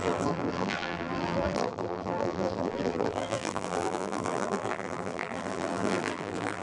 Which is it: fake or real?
fake